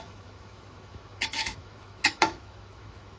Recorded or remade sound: remade